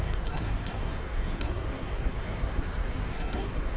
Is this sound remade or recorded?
remade